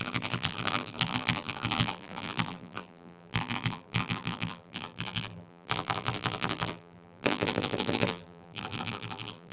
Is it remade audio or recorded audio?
remade